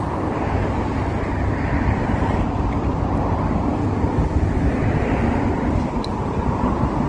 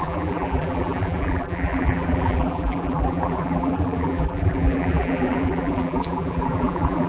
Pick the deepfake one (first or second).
second